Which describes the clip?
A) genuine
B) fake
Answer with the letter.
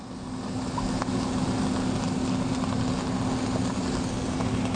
A